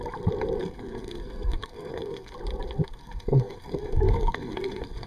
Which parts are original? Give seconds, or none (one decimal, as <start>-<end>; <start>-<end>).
0.0-0.6; 2.3-3.0